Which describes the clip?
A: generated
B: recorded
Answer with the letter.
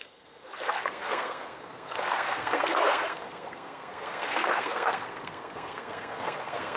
A